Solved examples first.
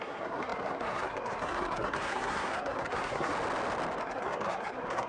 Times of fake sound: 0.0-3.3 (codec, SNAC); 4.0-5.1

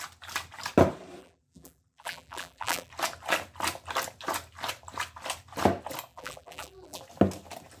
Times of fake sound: 1.2-2.9 (vocoder, BigVGAN v2); 6.1-7.0

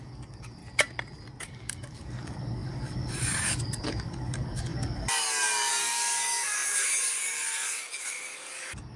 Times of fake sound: 0.0-0.6 (codec, DAC); 1.4-9.0

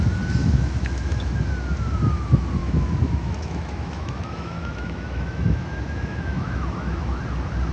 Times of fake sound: 0.4-1.3 (autoencoder, DAC-VAE); 2.6-7.2

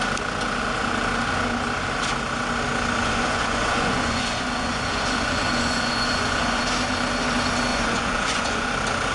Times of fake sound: 3.0-6.6 (vocoder, Vocos); 7.7-8.7

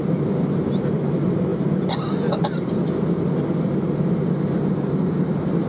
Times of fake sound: none

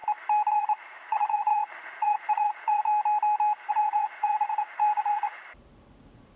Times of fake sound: 0.5-2.9 (vocoder, Vocos); 3.7-6.4

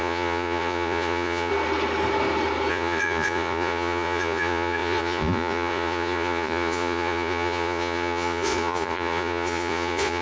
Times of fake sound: 0.0-1.5 (vocoder, Vocos); 2.7-10.2